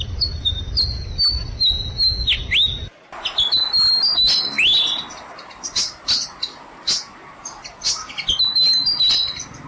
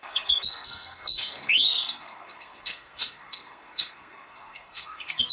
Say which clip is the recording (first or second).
first